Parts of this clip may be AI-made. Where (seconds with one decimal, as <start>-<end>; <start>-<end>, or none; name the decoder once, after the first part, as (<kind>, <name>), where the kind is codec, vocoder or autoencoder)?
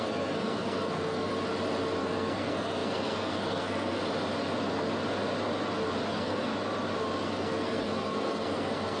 0.0-1.3 (codec, SNAC); 2.0-4.0; 6.1-6.5; 7.2-9.0